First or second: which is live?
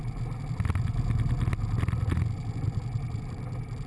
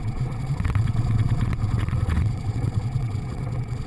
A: first